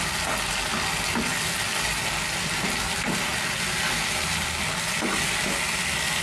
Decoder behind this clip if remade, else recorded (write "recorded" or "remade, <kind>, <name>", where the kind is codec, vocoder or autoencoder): recorded